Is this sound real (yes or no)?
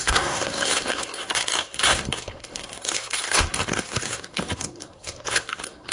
no